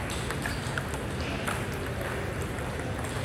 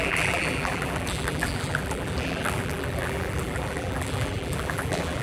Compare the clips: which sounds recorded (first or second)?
first